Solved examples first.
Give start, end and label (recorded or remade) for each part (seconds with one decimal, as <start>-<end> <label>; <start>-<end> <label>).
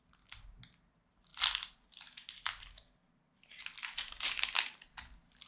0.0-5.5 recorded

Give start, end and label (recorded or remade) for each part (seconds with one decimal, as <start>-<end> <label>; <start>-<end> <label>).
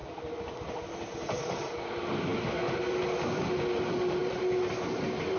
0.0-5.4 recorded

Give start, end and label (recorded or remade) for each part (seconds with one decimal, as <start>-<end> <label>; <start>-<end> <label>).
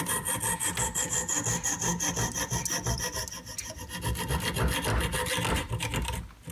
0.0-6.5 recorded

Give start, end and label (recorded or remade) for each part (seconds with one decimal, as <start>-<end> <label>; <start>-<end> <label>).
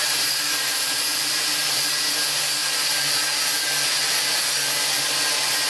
0.0-2.1 remade; 2.1-5.7 recorded